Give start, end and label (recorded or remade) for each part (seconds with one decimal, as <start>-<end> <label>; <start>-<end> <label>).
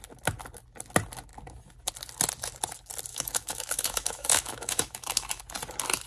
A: 0.0-3.1 recorded; 3.1-5.4 remade; 5.4-6.1 recorded